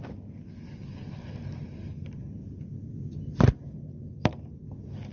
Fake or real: real